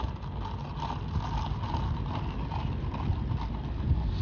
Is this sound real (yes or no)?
yes